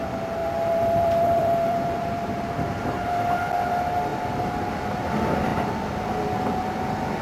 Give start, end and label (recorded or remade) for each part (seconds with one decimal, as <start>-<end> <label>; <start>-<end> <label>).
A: 0.0-0.4 recorded; 0.4-3.2 remade; 3.2-7.2 recorded